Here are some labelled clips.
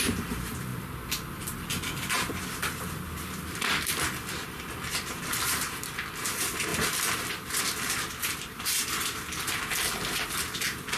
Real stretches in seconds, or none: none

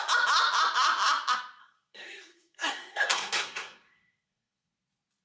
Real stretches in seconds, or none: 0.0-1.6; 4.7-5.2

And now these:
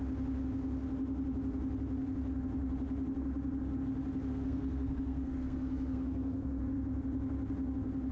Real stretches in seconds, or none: 0.0-4.3; 6.6-8.1

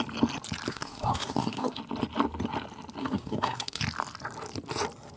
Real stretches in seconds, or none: 0.0-0.7; 1.8-3.0; 3.8-5.2

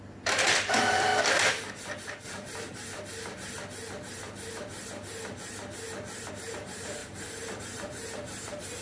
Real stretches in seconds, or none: 1.1-6.3

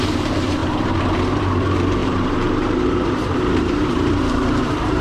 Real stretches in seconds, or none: 0.0-2.0

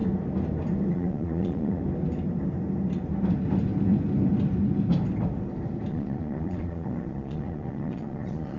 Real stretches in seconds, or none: 0.0-0.9; 1.8-5.9